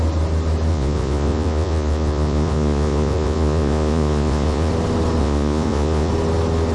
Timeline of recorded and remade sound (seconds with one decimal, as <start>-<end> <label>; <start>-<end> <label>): 0.0-0.7 recorded; 0.7-4.7 remade; 4.7-5.2 recorded; 5.2-6.1 remade; 6.1-6.7 recorded